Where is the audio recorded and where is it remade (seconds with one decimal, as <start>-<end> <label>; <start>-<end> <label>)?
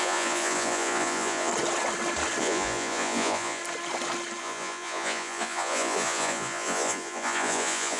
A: 0.0-1.5 remade; 1.5-2.4 recorded; 2.4-3.6 remade; 3.6-4.4 recorded; 4.4-8.0 remade